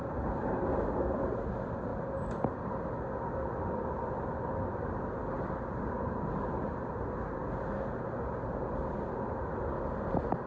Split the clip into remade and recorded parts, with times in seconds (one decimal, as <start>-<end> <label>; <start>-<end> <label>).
0.0-10.5 recorded